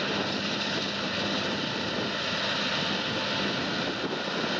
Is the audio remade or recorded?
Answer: recorded